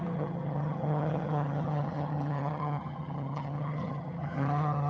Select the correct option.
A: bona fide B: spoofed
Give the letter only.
B